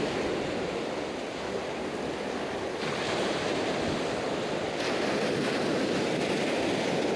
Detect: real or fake real